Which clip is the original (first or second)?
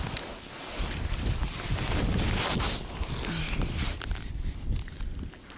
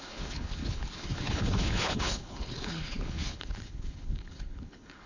first